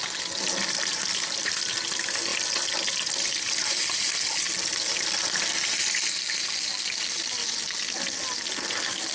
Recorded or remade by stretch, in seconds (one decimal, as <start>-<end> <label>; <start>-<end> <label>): 0.0-9.1 recorded